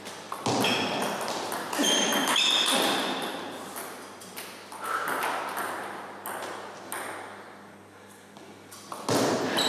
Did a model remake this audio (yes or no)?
no